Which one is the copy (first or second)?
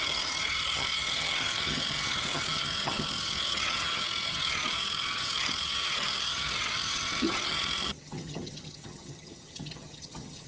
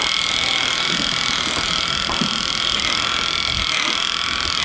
first